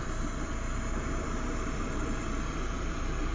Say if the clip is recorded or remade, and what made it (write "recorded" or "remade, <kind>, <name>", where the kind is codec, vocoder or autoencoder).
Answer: remade, vocoder, BigVGAN v2